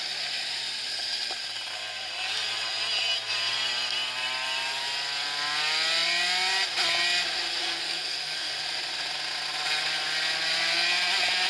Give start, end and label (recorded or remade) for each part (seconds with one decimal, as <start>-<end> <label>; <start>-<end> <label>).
0.0-7.6 recorded; 7.6-8.6 remade; 8.6-11.5 recorded